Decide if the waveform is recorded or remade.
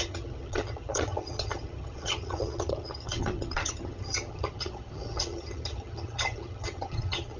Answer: remade